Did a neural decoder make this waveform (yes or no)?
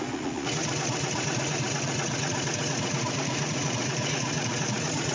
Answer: yes